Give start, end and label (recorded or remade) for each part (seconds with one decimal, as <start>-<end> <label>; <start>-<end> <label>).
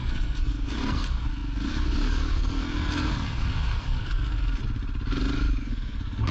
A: 0.0-4.6 remade; 4.6-5.6 recorded; 5.6-6.3 remade